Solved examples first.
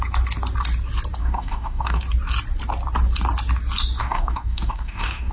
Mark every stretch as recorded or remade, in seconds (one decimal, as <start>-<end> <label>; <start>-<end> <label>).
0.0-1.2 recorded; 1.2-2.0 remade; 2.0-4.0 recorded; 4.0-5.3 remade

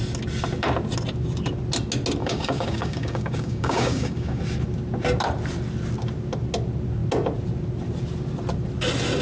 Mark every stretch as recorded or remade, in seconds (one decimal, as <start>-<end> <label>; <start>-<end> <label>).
0.0-2.2 recorded; 2.2-4.4 remade; 4.4-9.2 recorded

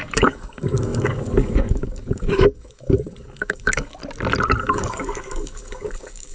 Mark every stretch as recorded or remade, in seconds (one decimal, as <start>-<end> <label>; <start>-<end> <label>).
0.0-4.0 remade; 4.0-4.6 recorded; 4.6-6.3 remade

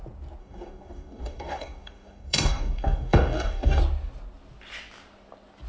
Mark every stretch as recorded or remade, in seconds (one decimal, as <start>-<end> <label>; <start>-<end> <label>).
0.0-0.4 recorded; 0.4-3.8 remade; 3.8-5.7 recorded

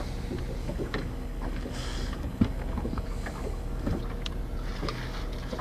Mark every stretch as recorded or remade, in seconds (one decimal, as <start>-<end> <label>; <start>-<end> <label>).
0.0-0.6 recorded; 0.6-4.0 remade; 4.0-5.6 recorded

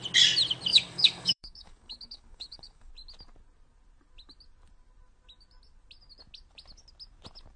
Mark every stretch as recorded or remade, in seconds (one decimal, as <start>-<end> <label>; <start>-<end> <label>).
0.0-0.7 recorded; 0.7-2.9 remade; 2.9-7.6 recorded

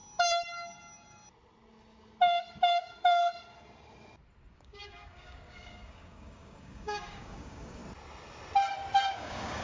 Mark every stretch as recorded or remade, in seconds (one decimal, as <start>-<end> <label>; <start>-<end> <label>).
0.0-4.5 recorded; 4.5-7.8 remade; 7.8-9.1 recorded; 9.1-9.6 remade

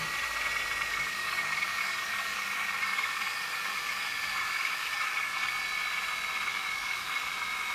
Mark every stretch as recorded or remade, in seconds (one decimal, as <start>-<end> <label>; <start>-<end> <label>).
0.0-0.9 recorded; 0.9-5.5 remade; 5.5-6.5 recorded; 6.5-7.3 remade; 7.3-7.7 recorded